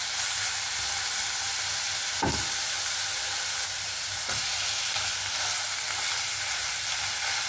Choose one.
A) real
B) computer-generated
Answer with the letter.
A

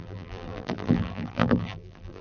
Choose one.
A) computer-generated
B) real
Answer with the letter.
A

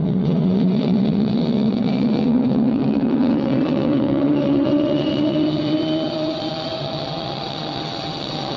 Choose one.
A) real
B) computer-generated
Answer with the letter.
B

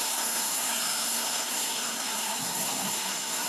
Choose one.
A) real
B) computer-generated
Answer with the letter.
B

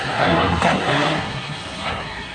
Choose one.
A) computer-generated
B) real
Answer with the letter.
A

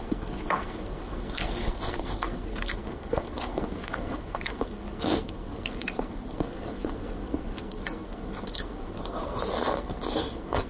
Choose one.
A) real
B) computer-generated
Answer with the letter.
B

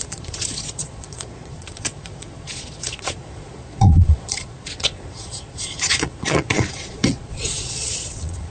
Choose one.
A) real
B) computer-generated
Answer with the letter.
B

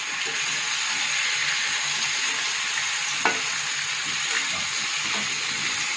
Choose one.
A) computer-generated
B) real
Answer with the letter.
B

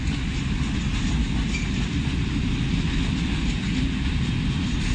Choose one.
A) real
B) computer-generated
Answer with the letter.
A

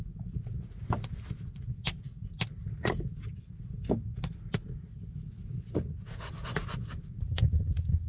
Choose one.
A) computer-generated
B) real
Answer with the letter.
B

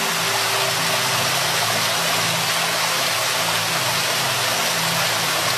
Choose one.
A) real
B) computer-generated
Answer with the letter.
A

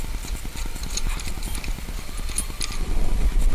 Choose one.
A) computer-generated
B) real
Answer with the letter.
B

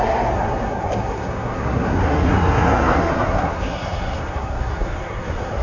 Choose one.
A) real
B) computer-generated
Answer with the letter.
B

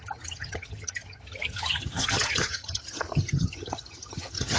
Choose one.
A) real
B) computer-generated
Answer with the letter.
B